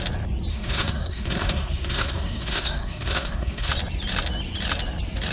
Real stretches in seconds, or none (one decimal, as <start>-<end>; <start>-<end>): 0.0-0.5; 3.7-5.3